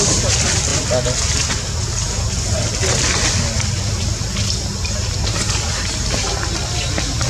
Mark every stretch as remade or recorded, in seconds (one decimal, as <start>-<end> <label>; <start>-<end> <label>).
0.0-7.3 recorded